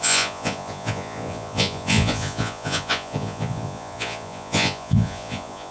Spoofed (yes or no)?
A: yes